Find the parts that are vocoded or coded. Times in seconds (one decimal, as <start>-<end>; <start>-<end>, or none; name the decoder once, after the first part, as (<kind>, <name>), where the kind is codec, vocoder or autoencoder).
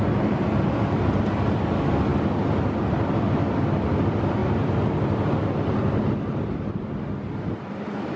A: none